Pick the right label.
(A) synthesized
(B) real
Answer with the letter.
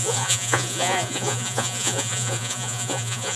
A